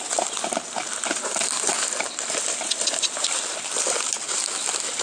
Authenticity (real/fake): real